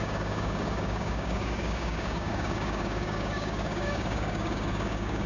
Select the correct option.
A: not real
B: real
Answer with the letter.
A